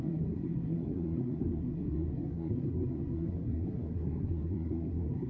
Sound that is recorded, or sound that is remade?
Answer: remade